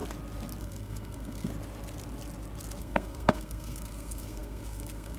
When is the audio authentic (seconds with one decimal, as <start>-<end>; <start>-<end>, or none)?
0.0-0.6; 1.5-2.8